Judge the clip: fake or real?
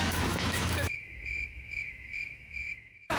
fake